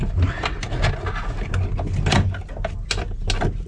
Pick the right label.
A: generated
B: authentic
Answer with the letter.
B